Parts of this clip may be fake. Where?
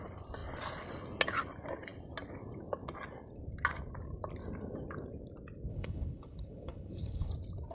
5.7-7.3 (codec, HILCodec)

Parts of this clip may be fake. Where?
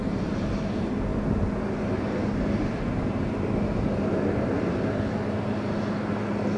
none